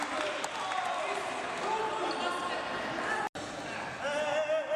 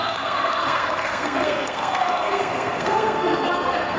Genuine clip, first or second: first